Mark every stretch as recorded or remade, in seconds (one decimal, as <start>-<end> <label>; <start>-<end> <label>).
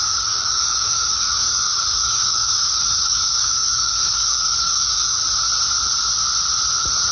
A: 0.0-5.2 remade; 5.2-7.1 recorded